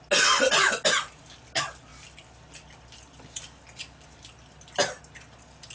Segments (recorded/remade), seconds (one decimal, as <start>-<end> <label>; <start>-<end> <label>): 0.0-5.7 recorded